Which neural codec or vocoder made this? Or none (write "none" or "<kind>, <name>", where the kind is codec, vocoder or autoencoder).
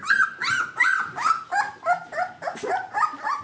none